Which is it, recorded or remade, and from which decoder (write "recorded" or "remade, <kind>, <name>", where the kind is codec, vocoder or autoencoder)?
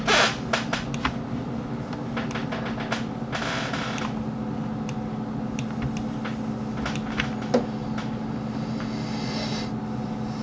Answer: recorded